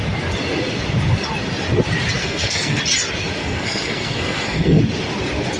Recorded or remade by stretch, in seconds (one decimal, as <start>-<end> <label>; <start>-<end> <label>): 0.0-2.2 recorded; 2.2-2.8 remade; 2.8-3.4 recorded; 3.4-4.8 remade; 4.8-5.6 recorded